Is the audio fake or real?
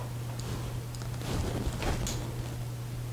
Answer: real